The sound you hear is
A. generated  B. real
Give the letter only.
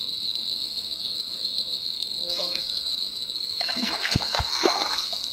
A